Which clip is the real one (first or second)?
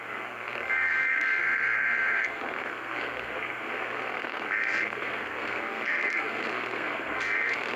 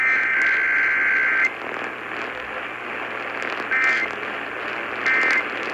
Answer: second